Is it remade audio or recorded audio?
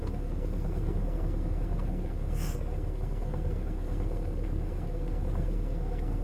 remade